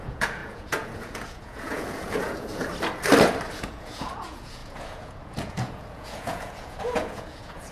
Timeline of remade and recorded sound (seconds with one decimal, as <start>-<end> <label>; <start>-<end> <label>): 0.0-2.7 remade; 2.7-3.5 recorded; 3.5-7.7 remade

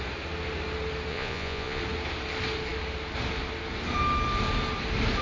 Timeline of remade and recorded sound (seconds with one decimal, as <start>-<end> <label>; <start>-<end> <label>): 0.0-1.1 recorded; 1.1-1.8 remade; 1.8-5.2 recorded

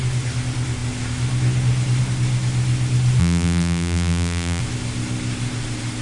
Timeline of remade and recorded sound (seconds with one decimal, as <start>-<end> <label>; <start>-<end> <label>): 0.0-3.2 recorded; 3.2-4.6 remade; 4.6-6.0 recorded